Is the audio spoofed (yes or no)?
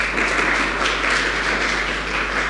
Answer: no